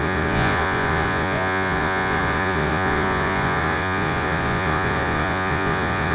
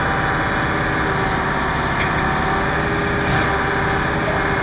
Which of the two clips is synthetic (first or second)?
first